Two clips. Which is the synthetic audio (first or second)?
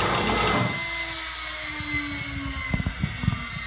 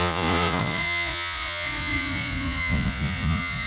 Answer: second